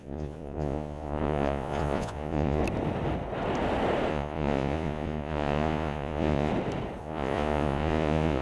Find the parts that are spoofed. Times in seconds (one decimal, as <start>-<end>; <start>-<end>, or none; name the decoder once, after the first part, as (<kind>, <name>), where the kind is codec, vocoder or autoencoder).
0.0-2.6 (vocoder, Vocos); 4.1-6.5; 7.0-8.4